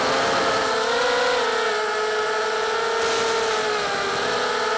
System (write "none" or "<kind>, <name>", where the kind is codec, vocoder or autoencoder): none